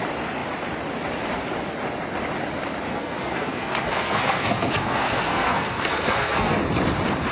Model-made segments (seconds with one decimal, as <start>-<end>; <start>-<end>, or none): 2.9-6.6